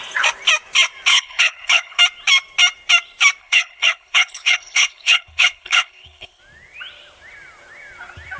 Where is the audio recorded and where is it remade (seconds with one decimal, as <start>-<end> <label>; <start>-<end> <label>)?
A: 0.0-1.1 recorded; 1.1-2.0 remade; 2.0-3.4 recorded; 3.4-6.4 remade; 6.4-8.4 recorded

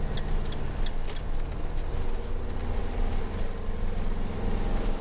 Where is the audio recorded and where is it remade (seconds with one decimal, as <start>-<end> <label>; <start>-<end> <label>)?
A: 0.0-5.0 recorded

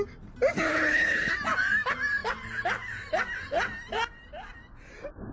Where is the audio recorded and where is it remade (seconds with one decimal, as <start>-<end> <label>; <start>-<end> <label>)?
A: 0.0-0.7 recorded; 0.7-1.3 remade; 1.3-5.3 recorded

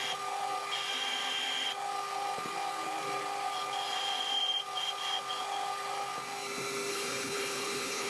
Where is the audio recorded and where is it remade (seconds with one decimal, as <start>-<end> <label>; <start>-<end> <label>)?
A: 0.0-6.9 recorded; 6.9-8.1 remade

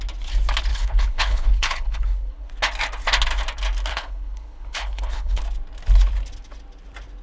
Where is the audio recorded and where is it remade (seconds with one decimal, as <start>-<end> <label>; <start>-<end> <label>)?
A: 0.0-0.7 recorded; 0.7-2.5 remade; 2.5-3.9 recorded; 3.9-5.4 remade; 5.4-7.2 recorded

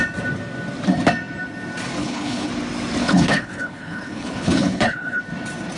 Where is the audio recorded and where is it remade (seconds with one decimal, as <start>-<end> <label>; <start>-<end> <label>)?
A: 0.0-2.0 recorded; 2.0-2.5 remade; 2.5-3.0 recorded; 3.0-5.2 remade; 5.2-5.8 recorded